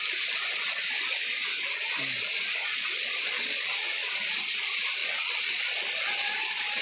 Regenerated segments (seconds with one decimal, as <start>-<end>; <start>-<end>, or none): 2.6-3.7; 5.0-5.6